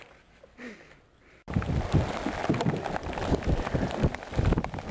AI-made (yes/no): no